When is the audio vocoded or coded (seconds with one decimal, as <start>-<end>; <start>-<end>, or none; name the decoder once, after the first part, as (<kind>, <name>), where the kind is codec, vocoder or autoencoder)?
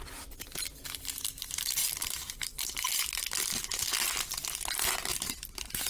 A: 1.8-3.2 (vocoder, BigVGAN v2)